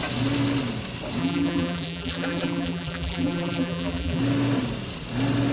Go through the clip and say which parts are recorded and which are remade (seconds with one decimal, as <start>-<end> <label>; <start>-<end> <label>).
0.0-1.2 recorded; 1.2-4.2 remade; 4.2-5.5 recorded